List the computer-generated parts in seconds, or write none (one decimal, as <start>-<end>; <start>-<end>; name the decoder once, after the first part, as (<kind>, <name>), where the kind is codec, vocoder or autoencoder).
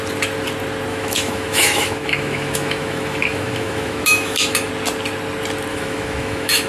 0.9-4.7 (autoencoder, DAC-VAE); 5.7-6.7